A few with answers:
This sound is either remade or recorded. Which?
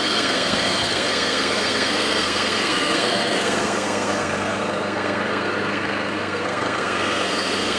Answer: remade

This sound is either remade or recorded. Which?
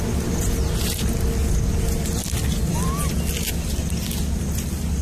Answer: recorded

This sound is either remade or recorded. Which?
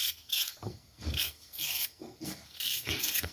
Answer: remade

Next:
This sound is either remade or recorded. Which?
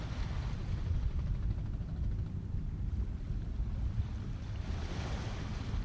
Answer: recorded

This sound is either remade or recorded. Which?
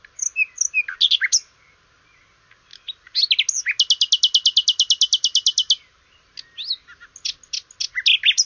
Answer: recorded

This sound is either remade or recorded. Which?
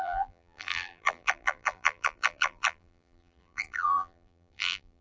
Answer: remade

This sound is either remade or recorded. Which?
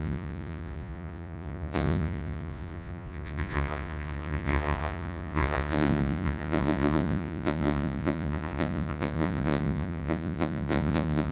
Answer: remade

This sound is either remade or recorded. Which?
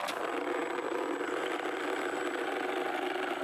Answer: recorded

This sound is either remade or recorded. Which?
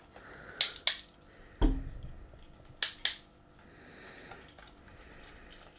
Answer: recorded